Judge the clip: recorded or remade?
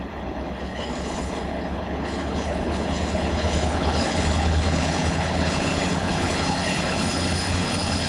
remade